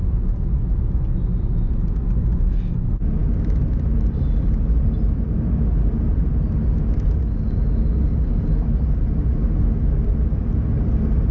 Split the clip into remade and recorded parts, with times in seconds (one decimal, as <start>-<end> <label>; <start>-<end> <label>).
0.0-11.3 recorded